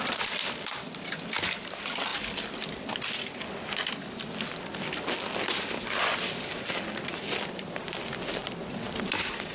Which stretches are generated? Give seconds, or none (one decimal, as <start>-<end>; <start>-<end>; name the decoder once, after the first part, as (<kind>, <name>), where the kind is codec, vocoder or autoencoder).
none